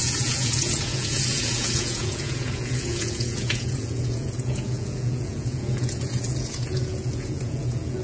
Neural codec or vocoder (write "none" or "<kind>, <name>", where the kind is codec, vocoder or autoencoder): vocoder, Vocos